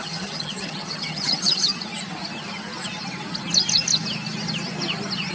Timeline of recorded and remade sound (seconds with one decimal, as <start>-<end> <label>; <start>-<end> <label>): 0.0-1.7 remade; 1.7-5.3 recorded